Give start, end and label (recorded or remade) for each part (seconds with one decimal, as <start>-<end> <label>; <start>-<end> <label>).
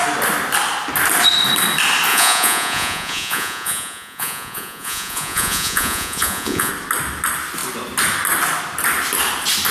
0.0-2.1 recorded; 2.1-6.7 remade; 6.7-9.7 recorded